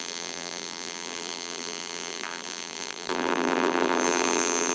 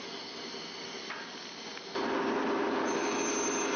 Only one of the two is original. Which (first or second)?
second